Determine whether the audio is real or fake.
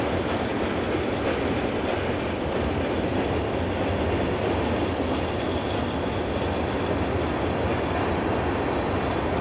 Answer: real